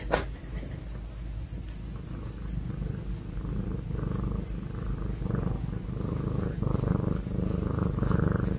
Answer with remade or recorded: recorded